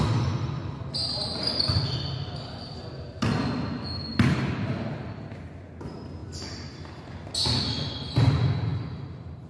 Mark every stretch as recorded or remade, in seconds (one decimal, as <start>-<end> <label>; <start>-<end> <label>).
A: 0.0-0.6 recorded; 0.6-1.5 remade; 1.5-9.5 recorded